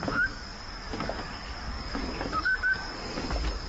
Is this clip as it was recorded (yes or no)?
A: no